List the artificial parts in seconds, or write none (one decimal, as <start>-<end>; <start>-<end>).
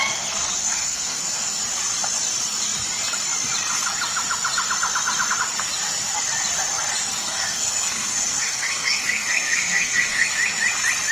0.6-1.6; 7.2-10.3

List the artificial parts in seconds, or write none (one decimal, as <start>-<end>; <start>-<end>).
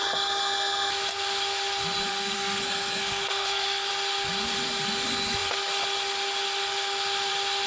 2.1-3.9